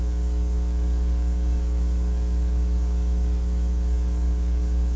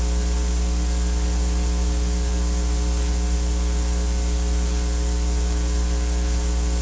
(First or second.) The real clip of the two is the second